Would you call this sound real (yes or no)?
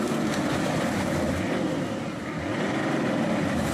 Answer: no